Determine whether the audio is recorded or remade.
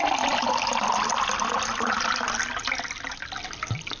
recorded